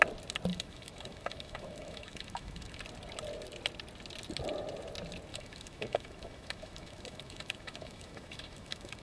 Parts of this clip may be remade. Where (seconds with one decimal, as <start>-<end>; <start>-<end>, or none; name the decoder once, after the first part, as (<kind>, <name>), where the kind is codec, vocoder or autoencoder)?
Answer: 0.5-2.8 (autoencoder, DAC-VAE); 5.3-9.0